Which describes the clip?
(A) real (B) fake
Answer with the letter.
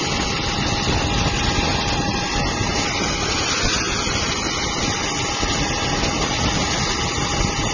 A